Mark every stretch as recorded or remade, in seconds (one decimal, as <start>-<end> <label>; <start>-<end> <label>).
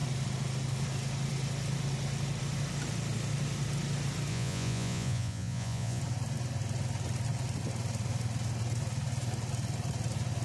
0.0-4.3 recorded; 4.3-6.0 remade; 6.0-10.4 recorded